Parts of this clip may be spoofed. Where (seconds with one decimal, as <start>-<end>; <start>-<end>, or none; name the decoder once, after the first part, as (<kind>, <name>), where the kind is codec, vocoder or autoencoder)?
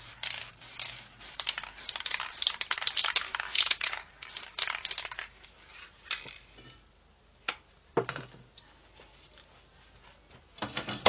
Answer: 3.5-4.0 (vocoder, Vocos)